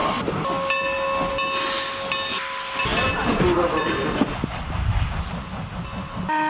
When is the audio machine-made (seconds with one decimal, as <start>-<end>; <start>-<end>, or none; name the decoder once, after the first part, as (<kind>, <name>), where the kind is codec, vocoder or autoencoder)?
none